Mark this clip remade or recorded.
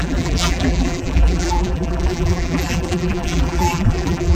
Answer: remade